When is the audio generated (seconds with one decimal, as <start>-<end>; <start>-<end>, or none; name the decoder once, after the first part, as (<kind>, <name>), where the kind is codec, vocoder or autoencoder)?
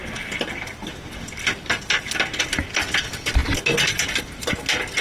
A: none